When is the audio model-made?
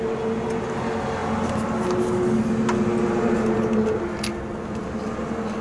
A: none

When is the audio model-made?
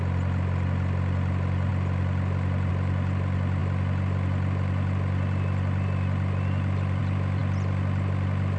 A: none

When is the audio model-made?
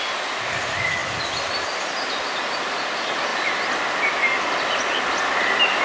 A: none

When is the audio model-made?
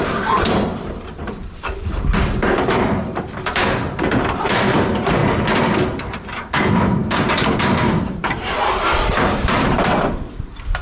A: 0.0-5.2 (vocoder, BigVGAN v2); 6.0-10.8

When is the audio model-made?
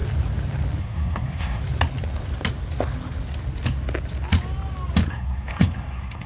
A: 0.8-1.6 (codec, SNAC); 5.1-6.3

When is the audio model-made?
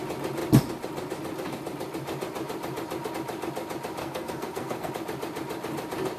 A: 4.0-4.9 (codec, SNAC)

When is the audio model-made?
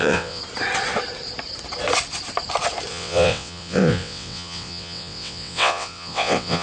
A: 0.0-0.4 (vocoder, WaveNeXt); 2.9-6.6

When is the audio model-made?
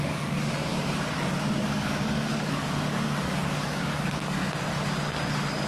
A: 0.0-4.4 (codec, DAC)